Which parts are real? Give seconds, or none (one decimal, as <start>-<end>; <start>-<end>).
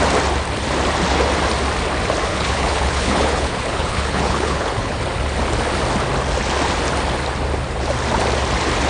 0.0-2.3; 5.0-8.9